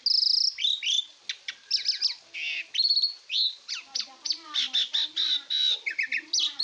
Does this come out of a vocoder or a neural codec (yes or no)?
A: no